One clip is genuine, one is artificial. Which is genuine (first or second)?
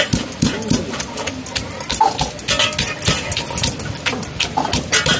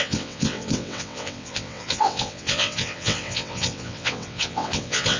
first